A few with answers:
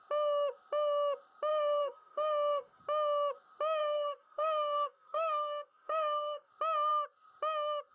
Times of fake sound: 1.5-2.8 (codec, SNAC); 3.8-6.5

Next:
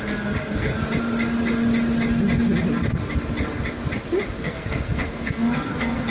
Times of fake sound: 0.0-0.7 (codec, SNAC); 4.4-6.1

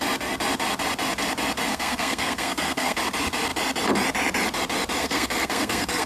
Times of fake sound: 1.7-3.0 (codec, SNAC); 5.0-6.1